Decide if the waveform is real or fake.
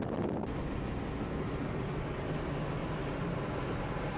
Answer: real